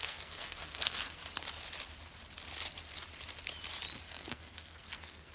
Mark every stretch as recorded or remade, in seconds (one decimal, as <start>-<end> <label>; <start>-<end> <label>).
0.0-1.2 remade; 1.2-4.1 recorded; 4.1-5.3 remade